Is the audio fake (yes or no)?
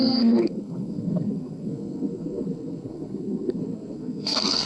yes